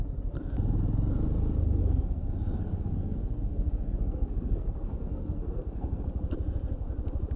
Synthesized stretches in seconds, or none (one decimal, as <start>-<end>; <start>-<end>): 1.8-6.0